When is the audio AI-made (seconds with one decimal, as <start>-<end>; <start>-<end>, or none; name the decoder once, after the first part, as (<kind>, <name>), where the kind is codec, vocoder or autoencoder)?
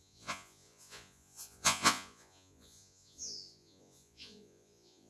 0.0-5.1 (vocoder, Vocos)